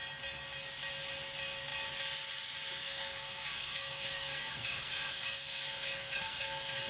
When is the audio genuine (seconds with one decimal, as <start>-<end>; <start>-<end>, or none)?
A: 0.0-2.8